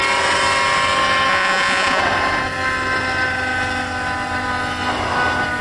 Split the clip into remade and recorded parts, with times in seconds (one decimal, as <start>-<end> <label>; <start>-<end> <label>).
0.0-1.3 recorded; 1.3-2.0 remade; 2.0-5.6 recorded